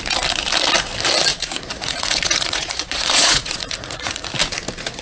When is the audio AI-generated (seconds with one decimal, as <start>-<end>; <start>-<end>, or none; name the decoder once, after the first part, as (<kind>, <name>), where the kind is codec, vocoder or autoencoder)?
1.3-4.3 (vocoder, Vocos)